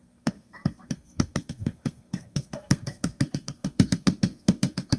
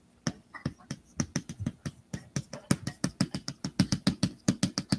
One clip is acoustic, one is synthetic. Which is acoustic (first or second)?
second